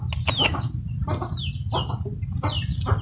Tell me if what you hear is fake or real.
real